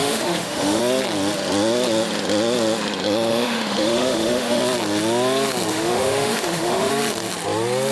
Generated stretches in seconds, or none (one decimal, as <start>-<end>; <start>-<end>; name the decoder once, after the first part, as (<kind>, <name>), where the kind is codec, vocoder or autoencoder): 0.0-0.8 (autoencoder, DAC-VAE); 3.3-4.6; 5.7-6.9